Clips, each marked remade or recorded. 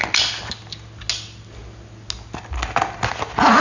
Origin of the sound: recorded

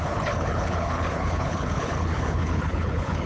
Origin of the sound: remade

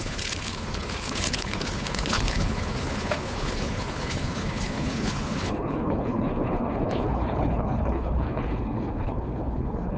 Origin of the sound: remade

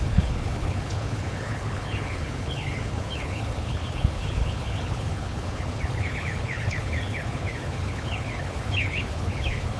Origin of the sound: remade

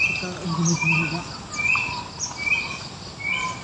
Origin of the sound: recorded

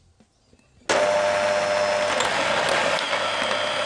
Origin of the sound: recorded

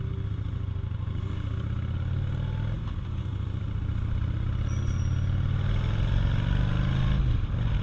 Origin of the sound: recorded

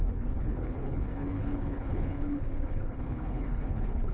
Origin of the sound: remade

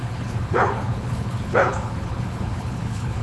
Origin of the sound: remade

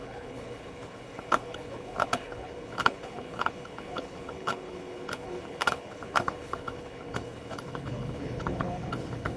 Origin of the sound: remade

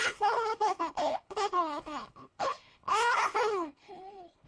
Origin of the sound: remade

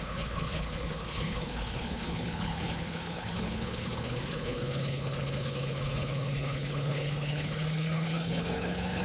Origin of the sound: remade